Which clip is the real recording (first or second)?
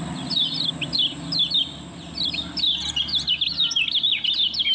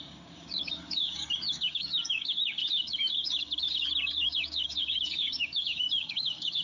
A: first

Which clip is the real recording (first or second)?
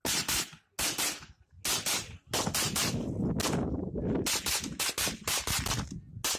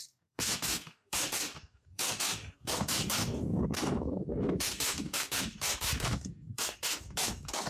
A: first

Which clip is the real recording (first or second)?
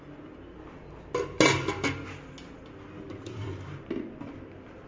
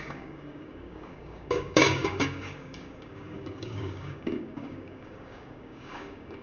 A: first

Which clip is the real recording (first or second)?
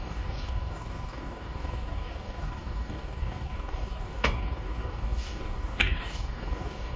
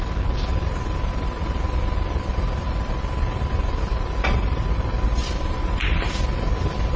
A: second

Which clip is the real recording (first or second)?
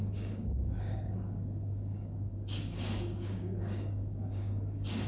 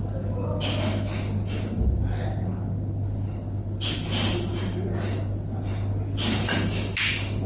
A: second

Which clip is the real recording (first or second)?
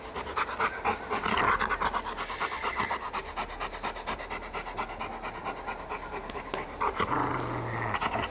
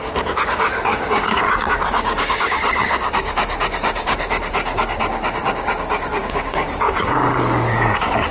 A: first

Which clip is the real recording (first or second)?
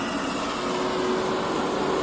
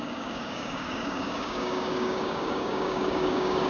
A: first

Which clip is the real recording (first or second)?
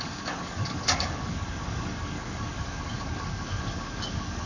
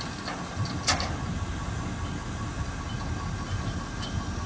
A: second